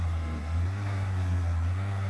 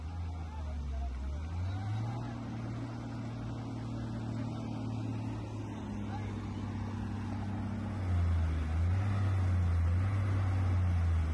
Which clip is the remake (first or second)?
first